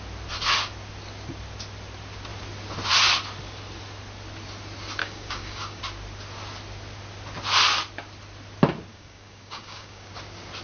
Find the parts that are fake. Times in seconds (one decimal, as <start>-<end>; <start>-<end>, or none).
5.0-5.8; 8.9-10.1